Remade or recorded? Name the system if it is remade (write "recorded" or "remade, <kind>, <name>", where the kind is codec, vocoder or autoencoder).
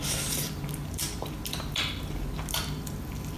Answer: recorded